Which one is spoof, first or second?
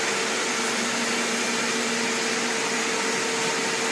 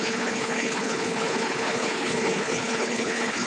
second